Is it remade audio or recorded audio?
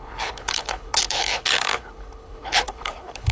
remade